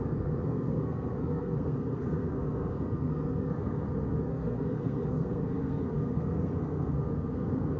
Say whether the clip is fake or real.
fake